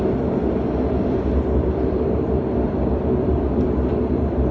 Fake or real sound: fake